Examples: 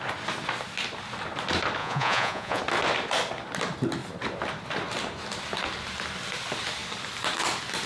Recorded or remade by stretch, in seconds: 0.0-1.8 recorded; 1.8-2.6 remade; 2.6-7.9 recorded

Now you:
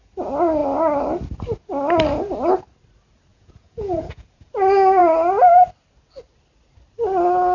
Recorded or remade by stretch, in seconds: 0.0-3.3 recorded; 3.3-4.5 remade; 4.5-7.5 recorded

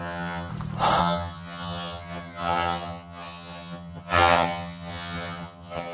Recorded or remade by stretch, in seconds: 0.0-0.5 remade; 0.5-1.0 recorded; 1.0-5.9 remade

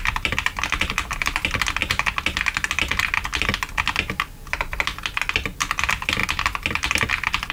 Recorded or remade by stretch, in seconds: 0.0-1.8 remade; 1.8-5.6 recorded; 5.6-6.2 remade; 6.2-6.7 recorded; 6.7-7.5 remade

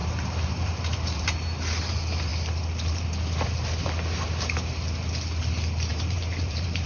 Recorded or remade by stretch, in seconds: 0.0-1.3 remade; 1.3-5.9 recorded; 5.9-6.9 remade

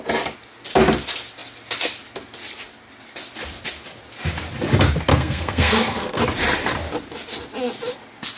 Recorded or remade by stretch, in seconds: 0.0-5.1 recorded; 5.1-6.2 remade; 6.2-8.4 recorded

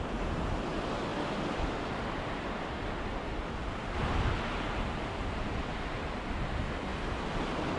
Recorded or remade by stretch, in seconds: 0.0-1.1 recorded; 1.1-3.8 remade; 3.8-7.8 recorded